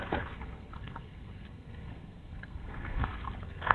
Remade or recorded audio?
remade